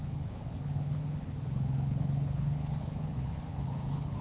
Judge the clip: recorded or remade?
remade